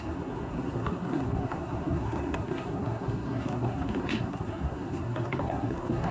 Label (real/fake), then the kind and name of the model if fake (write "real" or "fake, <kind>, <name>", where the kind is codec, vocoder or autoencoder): fake, codec, SNAC